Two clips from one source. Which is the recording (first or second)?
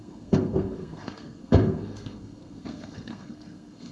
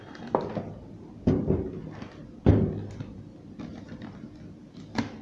second